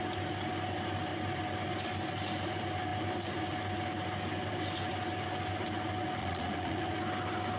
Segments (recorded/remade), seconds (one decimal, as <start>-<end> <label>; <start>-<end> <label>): 0.0-6.2 recorded; 6.2-6.8 remade; 6.8-7.6 recorded